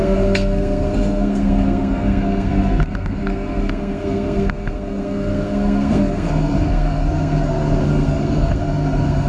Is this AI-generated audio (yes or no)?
yes